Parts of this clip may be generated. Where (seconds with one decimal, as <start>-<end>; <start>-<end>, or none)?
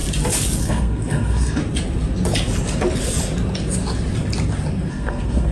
0.6-1.6; 4.9-5.5